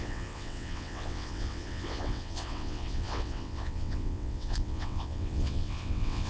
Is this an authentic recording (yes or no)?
no